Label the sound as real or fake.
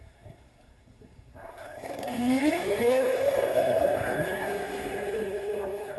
fake